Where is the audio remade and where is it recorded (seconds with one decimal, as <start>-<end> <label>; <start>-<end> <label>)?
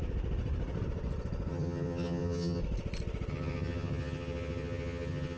0.0-1.5 recorded; 1.5-2.6 remade; 2.6-3.3 recorded; 3.3-5.4 remade